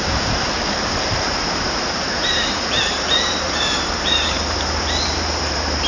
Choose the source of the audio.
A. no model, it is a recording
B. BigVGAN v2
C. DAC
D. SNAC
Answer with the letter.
B